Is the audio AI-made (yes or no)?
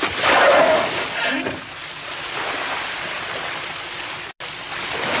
no